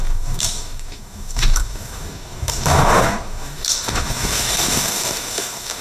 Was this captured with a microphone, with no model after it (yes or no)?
no